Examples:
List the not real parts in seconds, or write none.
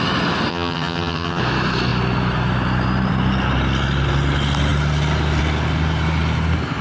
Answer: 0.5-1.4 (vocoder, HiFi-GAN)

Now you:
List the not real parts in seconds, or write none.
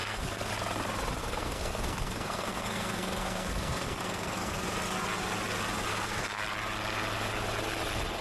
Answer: 0.0-0.5 (codec, SNAC); 1.2-4.5; 5.9-6.4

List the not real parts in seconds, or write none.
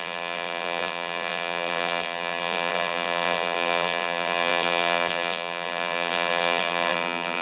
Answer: 0.0-7.4 (vocoder, BigVGAN v2)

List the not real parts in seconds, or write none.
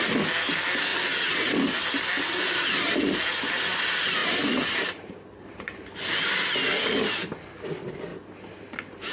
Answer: 4.2-6.5 (vocoder, BigVGAN v2); 8.1-9.1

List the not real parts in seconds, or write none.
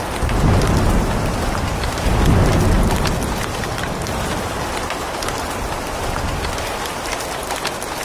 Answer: none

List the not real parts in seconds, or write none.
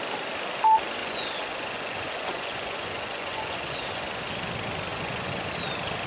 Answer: 1.0-4.2 (vocoder, Vocos); 4.9-5.5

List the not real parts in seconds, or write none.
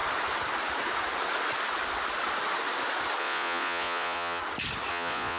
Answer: 3.2-4.4 (vocoder, Vocos); 4.9-5.4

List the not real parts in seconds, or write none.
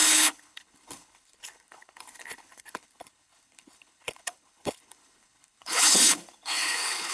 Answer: 0.0-7.1 (codec, HILCodec)